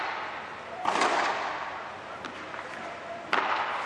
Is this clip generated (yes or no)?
no